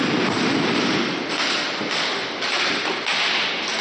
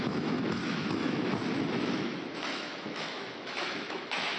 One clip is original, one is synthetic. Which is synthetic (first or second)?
second